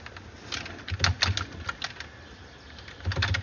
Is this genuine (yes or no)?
yes